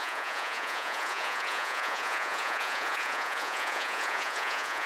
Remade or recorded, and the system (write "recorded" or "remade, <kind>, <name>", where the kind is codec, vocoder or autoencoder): remade, vocoder, Vocos